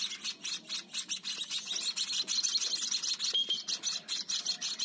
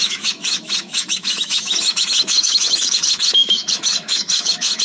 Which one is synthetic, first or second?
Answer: second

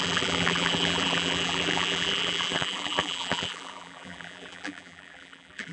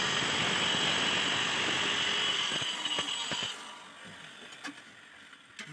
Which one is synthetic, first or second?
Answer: first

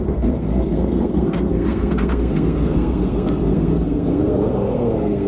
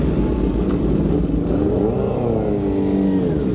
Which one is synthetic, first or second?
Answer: first